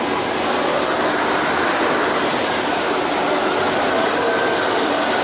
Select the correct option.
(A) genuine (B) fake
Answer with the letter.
A